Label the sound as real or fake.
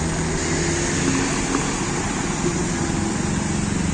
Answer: real